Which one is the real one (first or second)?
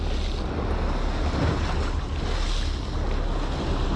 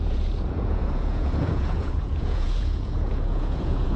first